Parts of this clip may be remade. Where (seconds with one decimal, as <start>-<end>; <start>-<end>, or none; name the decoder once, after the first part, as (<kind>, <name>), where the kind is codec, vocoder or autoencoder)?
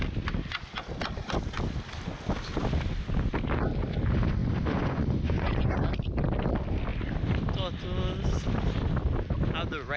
4.4-5.8 (vocoder, Vocos)